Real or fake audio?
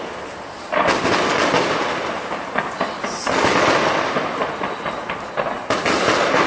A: real